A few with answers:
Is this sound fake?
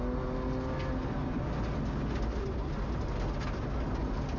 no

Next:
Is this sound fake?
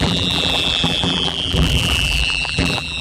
yes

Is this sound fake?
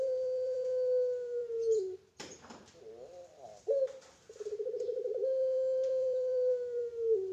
yes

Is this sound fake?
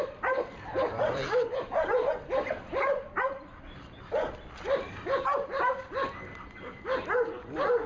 yes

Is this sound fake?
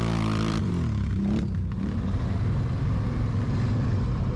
yes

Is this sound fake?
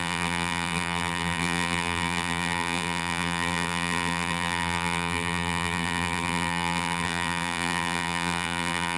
yes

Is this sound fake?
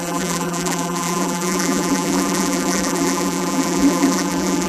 yes